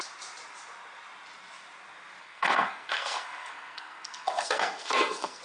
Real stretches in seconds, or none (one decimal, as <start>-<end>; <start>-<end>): 0.0-2.2